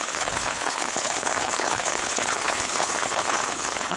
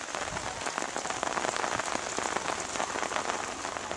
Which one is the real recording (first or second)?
second